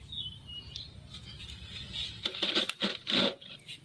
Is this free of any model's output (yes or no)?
yes